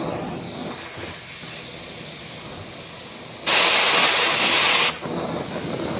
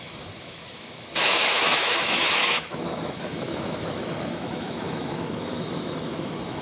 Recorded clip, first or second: first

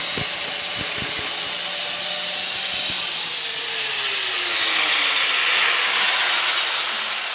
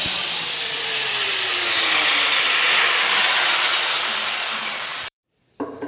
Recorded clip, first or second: first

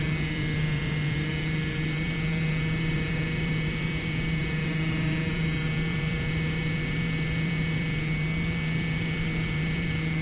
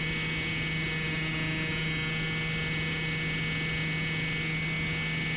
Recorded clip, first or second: second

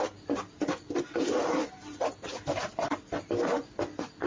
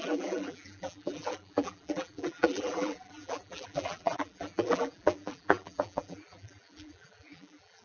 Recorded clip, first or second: first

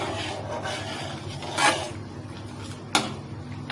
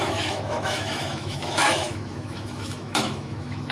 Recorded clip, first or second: first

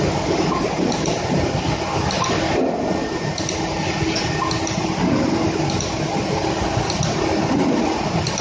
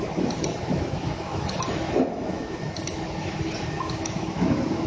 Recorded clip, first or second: first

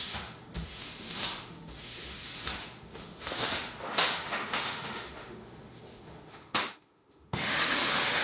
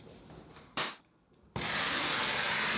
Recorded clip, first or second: second